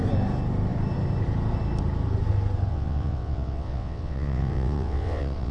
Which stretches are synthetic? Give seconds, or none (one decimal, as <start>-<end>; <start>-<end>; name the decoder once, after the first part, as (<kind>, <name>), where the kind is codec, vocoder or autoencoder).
2.7-5.5 (vocoder, WaveNeXt)